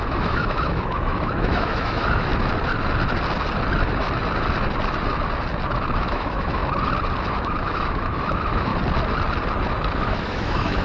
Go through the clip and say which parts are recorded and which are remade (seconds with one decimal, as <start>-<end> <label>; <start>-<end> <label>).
0.0-2.3 remade; 2.3-6.0 recorded; 6.0-6.6 remade; 6.6-7.3 recorded; 7.3-8.7 remade; 8.7-10.0 recorded; 10.0-10.8 remade